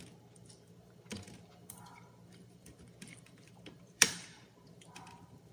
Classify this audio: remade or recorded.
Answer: remade